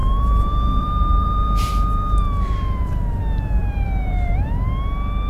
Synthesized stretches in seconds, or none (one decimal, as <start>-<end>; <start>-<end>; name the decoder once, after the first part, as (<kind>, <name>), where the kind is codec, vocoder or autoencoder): 0.0-3.2 (vocoder, BigVGAN v2); 3.6-4.8